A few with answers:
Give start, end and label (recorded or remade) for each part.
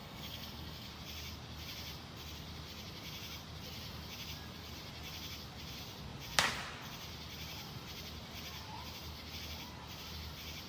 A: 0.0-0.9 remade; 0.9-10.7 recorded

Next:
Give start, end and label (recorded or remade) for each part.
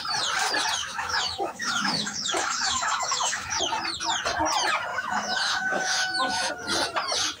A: 0.0-0.8 recorded; 0.8-3.6 remade; 3.6-4.9 recorded; 4.9-6.5 remade; 6.5-7.4 recorded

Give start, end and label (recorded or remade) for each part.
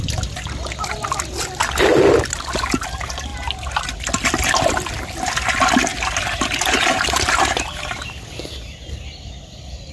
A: 0.0-5.9 recorded; 5.9-8.1 remade; 8.1-9.9 recorded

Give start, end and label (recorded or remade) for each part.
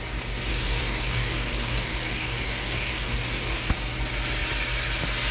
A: 0.0-0.5 recorded; 0.5-3.7 remade; 3.7-5.3 recorded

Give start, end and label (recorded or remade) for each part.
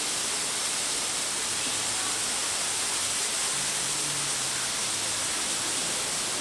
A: 0.0-0.6 recorded; 0.6-1.7 remade; 1.7-6.4 recorded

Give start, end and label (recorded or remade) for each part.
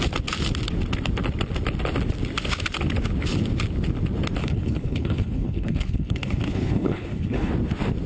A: 0.0-4.4 recorded; 4.4-7.5 remade; 7.5-8.1 recorded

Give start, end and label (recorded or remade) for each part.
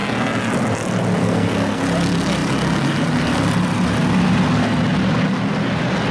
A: 0.0-1.2 recorded; 1.2-1.8 remade; 1.8-6.1 recorded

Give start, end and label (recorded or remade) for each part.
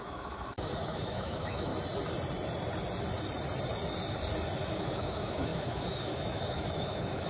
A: 0.0-1.7 remade; 1.7-4.7 recorded; 4.7-7.3 remade